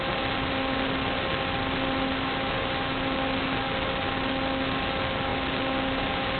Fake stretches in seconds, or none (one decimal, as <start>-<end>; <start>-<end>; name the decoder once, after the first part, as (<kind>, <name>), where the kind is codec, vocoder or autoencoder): none